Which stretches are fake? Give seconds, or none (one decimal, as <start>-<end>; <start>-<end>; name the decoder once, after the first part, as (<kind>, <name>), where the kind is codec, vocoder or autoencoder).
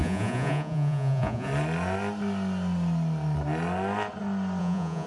0.0-1.5 (vocoder, Vocos); 4.6-5.1